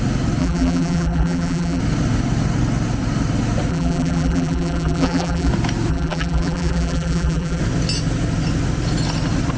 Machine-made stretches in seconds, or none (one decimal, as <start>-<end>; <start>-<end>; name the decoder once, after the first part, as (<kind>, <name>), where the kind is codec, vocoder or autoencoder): 0.4-1.8 (vocoder, BigVGAN v2); 3.7-5.5; 5.9-7.6